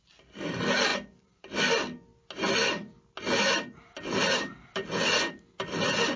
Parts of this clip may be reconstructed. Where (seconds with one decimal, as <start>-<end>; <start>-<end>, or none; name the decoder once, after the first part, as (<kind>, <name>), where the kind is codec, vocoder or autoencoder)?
none